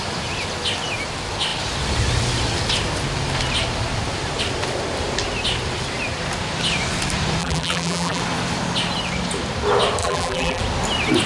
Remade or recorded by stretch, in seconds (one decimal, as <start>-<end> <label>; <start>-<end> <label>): 0.0-7.4 recorded; 7.4-8.2 remade; 8.2-10.0 recorded; 10.0-10.6 remade; 10.6-11.3 recorded